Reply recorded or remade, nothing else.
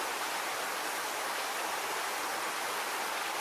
recorded